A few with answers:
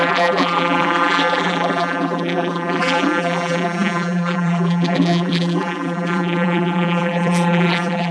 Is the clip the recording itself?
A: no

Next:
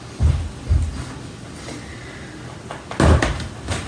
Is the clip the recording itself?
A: yes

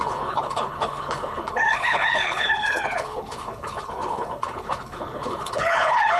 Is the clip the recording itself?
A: no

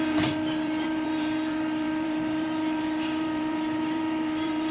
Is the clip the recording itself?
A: no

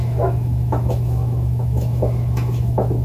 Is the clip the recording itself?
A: no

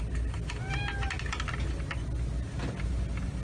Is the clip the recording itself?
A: yes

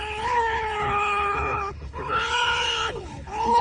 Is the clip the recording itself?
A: no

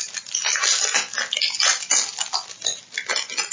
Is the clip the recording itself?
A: yes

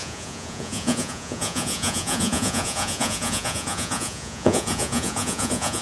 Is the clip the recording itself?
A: no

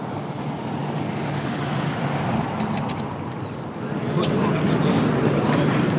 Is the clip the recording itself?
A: yes